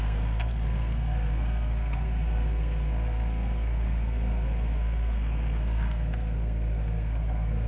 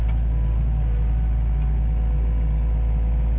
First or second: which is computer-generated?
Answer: first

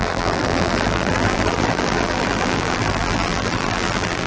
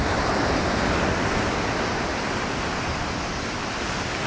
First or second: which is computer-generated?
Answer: first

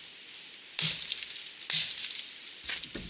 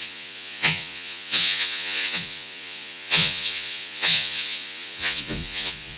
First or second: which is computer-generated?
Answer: second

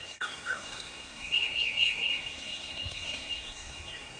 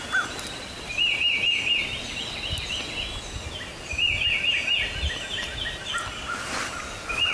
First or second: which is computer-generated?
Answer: first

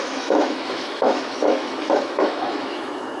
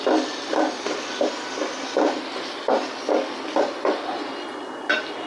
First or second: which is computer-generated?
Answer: first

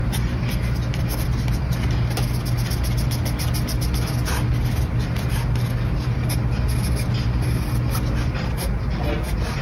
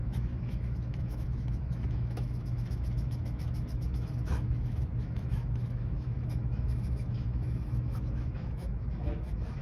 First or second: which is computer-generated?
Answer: second